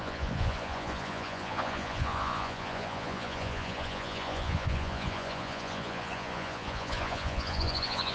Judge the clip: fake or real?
fake